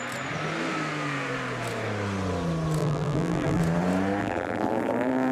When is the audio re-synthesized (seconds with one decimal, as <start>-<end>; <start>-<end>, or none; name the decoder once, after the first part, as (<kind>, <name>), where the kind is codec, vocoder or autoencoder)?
2.8-3.6 (vocoder, BigVGAN v2); 4.2-5.3